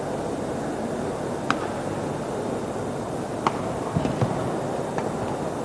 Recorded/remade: recorded